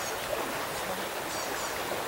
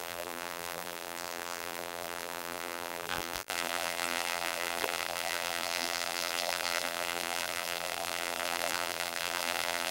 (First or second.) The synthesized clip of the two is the second